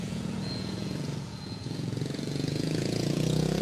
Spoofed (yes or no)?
yes